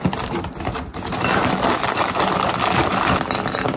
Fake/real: real